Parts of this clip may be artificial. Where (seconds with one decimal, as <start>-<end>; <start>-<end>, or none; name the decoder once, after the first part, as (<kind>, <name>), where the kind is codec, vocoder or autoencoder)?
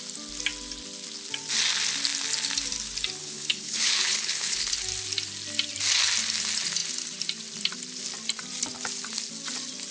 3.2-4.7 (codec, HILCodec)